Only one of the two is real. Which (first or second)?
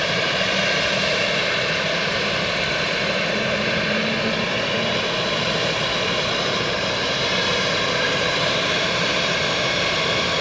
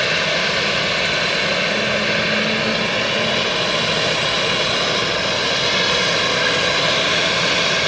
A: second